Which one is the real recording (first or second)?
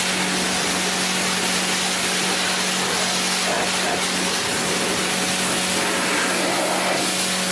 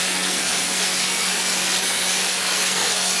first